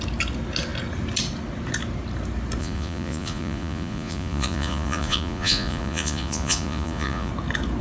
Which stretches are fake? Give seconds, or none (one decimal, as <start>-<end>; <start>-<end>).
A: 2.6-7.3